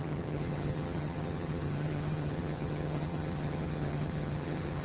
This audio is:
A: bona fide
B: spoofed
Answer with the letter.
B